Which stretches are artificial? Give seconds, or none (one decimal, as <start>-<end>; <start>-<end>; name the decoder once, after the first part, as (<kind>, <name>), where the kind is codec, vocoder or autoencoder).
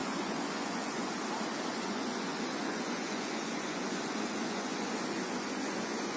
0.0-1.1 (vocoder, Vocos); 1.7-6.2